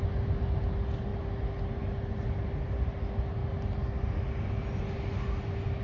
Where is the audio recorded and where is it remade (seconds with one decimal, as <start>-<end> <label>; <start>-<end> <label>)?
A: 0.0-5.8 recorded